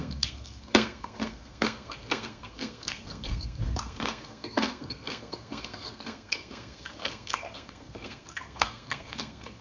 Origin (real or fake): fake